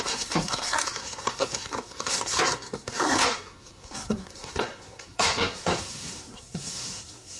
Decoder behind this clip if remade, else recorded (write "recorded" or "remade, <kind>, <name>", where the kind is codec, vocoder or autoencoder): remade, codec, SNAC